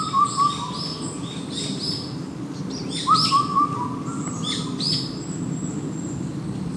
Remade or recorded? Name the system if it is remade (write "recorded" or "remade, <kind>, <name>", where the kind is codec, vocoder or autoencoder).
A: remade, vocoder, BigVGAN v2